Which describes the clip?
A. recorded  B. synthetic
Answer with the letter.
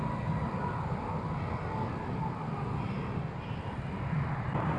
A